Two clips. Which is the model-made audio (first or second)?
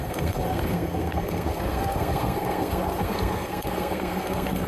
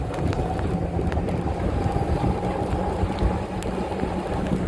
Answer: first